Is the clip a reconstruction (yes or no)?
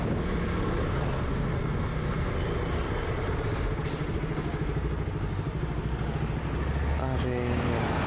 no